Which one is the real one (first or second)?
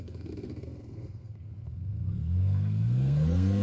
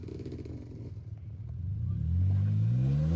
second